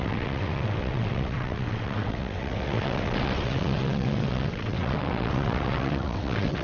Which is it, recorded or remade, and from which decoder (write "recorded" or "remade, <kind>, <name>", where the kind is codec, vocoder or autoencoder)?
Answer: remade, vocoder, WaveNeXt